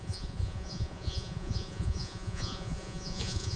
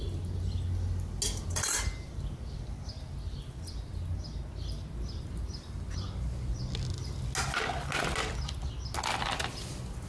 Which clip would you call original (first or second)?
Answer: second